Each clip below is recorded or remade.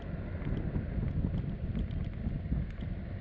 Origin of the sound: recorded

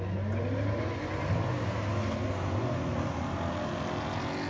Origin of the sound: recorded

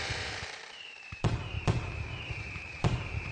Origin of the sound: remade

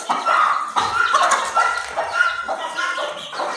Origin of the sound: remade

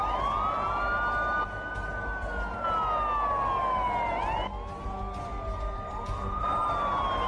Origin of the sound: recorded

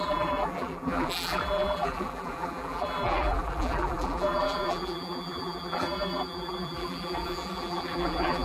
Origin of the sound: remade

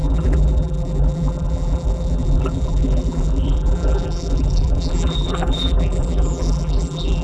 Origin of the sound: remade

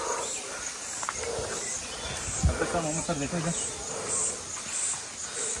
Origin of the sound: recorded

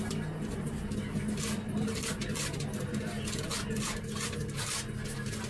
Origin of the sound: recorded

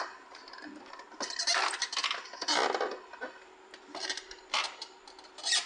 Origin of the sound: recorded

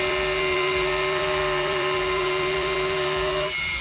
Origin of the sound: remade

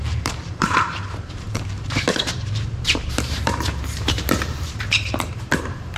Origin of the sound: remade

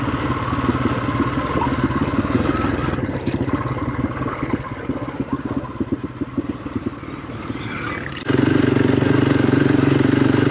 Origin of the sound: recorded